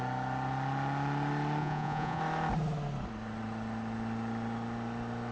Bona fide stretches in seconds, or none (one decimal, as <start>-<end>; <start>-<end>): 0.0-1.6; 2.2-5.3